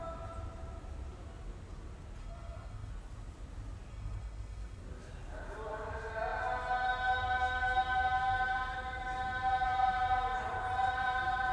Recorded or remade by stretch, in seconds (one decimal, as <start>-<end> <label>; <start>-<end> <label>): 0.0-2.2 recorded; 2.2-2.9 remade; 2.9-3.9 recorded; 3.9-4.8 remade; 4.8-11.5 recorded